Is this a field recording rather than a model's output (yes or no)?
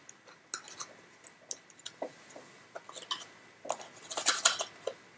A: yes